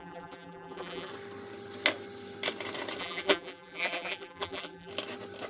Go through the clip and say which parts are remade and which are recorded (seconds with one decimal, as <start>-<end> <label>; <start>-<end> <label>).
0.0-1.1 remade; 1.1-3.0 recorded; 3.0-4.9 remade; 4.9-5.5 recorded